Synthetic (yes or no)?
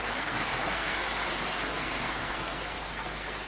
yes